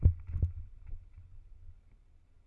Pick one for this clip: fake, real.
real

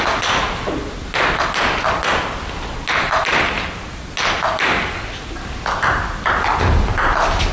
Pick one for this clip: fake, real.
real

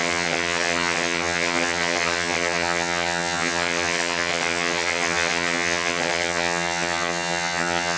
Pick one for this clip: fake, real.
fake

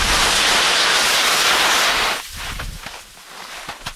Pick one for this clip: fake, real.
real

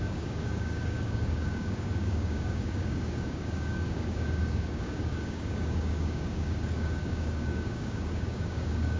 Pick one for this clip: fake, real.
fake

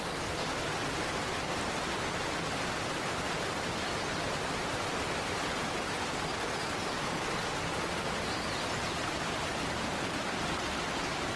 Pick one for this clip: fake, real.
real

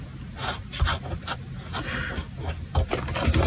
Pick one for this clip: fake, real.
real